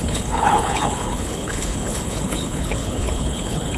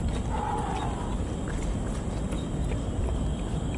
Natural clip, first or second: second